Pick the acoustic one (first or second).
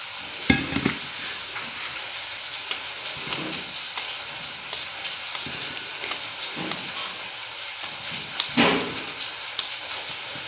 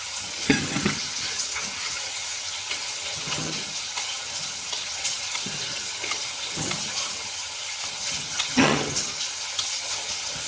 first